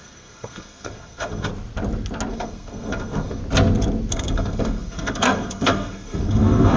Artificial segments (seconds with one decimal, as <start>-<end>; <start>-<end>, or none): 0.0-1.5; 2.3-3.4; 4.1-6.8